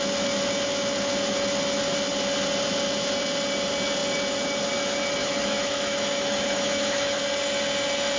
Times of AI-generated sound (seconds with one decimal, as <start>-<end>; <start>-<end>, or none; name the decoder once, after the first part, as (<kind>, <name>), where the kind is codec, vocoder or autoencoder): 5.2-7.2 (autoencoder, DAC-VAE)